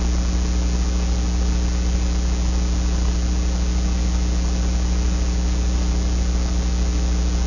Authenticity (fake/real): real